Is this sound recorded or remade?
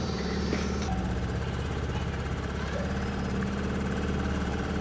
remade